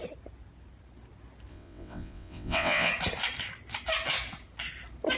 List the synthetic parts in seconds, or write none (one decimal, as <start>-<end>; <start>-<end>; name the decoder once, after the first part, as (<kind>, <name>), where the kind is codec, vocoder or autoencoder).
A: 1.5-2.9 (vocoder, WaveNeXt)